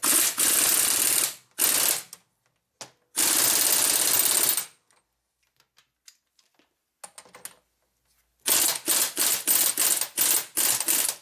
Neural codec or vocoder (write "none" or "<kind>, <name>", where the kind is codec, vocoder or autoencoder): none